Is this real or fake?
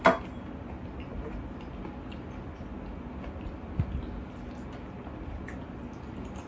real